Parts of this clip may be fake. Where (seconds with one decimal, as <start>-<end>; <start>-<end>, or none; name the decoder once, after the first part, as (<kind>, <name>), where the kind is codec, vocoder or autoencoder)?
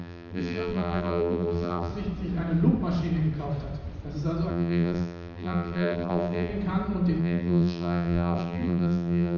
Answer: 0.0-1.9 (vocoder, BigVGAN v2); 4.5-6.5; 7.2-9.4